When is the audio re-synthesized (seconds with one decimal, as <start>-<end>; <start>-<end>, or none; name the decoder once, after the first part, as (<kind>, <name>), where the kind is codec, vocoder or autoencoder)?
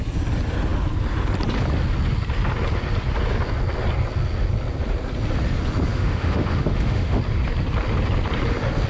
5.9-7.2 (autoencoder, DAC-VAE)